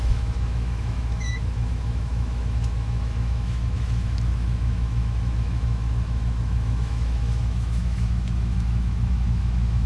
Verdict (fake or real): fake